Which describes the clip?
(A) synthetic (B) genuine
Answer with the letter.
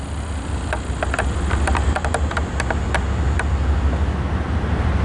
B